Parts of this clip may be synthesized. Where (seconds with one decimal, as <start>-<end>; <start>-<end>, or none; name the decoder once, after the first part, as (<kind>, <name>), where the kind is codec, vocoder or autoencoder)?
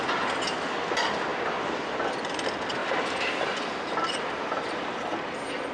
none